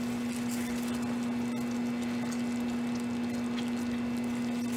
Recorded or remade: recorded